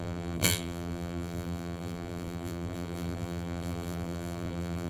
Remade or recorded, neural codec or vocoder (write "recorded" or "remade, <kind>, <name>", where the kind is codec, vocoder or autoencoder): remade, vocoder, BigVGAN v2